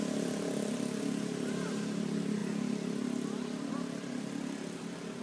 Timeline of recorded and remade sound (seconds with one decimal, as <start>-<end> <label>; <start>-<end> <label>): 0.0-5.2 recorded

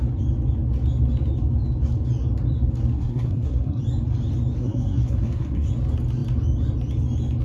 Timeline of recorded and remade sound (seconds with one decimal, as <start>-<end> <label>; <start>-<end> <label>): 0.0-2.9 recorded; 2.9-3.8 remade; 3.8-4.6 recorded; 4.6-5.7 remade; 5.7-7.4 recorded

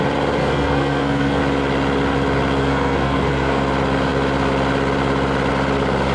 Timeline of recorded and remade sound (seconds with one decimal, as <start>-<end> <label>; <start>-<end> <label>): 0.0-0.4 recorded; 0.4-1.4 remade; 1.4-2.6 recorded; 2.6-3.6 remade; 3.6-6.1 recorded

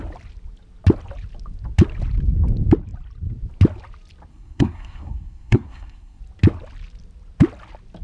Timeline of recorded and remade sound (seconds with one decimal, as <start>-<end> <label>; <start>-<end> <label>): 0.0-4.3 recorded; 4.3-6.2 remade; 6.2-8.0 recorded